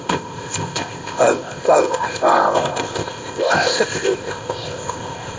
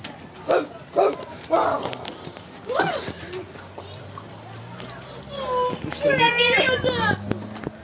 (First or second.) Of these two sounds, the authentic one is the second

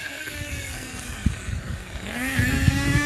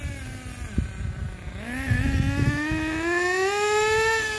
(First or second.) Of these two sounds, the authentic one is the second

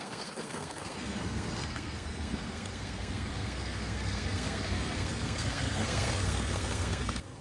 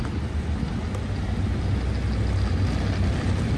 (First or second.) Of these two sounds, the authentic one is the second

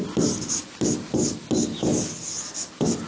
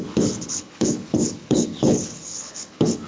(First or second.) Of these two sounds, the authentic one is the first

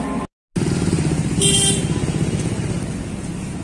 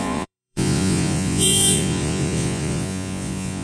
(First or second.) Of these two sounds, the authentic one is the first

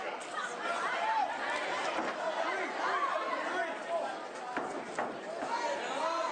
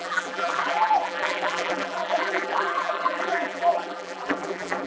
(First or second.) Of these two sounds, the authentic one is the first